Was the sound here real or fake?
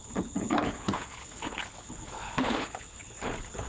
fake